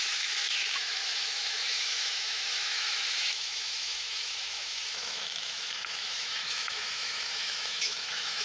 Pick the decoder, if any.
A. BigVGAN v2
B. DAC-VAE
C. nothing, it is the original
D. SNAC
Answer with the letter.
B